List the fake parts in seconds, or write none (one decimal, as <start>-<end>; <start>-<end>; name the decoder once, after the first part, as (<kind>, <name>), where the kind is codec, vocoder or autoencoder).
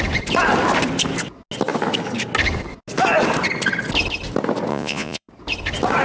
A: 4.7-5.3 (vocoder, Vocos)